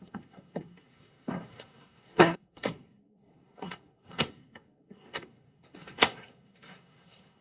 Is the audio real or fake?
fake